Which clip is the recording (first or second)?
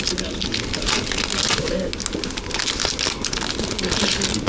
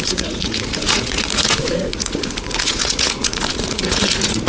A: first